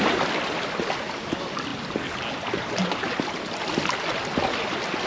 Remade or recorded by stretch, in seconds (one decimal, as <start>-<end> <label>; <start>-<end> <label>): 0.0-5.1 recorded